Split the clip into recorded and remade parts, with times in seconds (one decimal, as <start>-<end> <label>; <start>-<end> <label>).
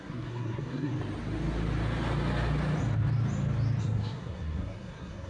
0.0-0.9 remade; 0.9-3.8 recorded; 3.8-5.3 remade